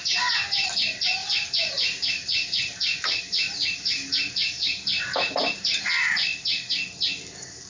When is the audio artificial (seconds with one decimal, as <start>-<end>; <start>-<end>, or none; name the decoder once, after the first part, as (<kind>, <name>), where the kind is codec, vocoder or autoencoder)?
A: 1.2-5.8 (vocoder, BigVGAN v2)